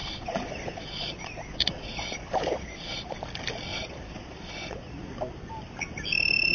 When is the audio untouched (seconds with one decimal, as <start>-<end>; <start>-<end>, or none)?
3.2-3.7; 5.1-6.5